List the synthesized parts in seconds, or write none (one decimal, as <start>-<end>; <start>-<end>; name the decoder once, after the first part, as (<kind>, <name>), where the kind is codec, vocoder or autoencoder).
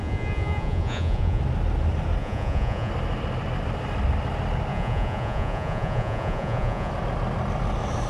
0.0-1.4 (vocoder, Vocos); 2.2-2.9; 4.7-6.9